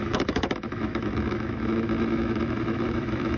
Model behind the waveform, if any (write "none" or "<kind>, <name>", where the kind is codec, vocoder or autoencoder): autoencoder, DAC-VAE